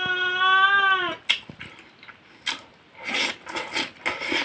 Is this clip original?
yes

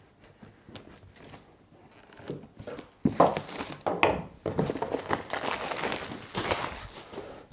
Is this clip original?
yes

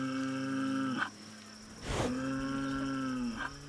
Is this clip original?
yes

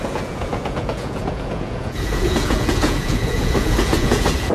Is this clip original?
no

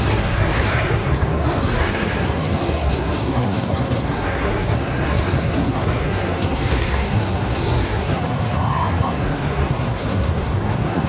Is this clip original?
no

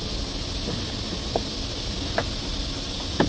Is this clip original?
yes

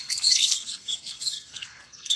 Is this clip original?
no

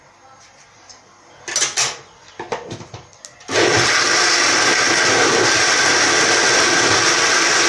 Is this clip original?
yes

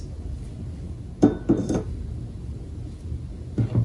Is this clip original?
yes